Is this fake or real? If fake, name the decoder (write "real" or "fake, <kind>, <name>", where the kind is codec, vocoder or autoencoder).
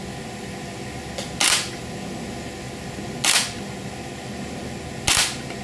real